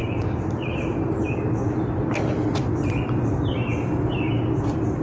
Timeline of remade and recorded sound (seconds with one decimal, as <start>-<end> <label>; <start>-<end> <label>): 0.0-1.2 remade; 1.2-5.0 recorded